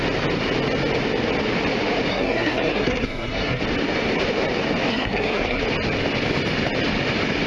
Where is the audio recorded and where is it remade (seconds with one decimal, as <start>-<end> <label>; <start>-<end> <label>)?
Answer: 0.0-2.1 recorded; 2.1-3.6 remade; 3.6-4.9 recorded; 4.9-5.6 remade; 5.6-7.5 recorded